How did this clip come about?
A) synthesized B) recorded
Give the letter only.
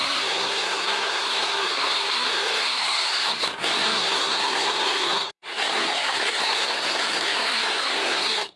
A